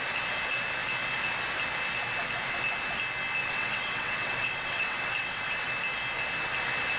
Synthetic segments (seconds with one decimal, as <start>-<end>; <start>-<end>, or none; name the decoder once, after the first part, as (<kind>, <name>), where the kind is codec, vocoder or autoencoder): 3.4-5.7 (vocoder, WaveNeXt)